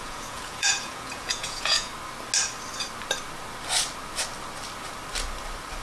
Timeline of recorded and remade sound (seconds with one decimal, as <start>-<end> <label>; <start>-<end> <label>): 0.0-1.9 remade; 1.9-5.8 recorded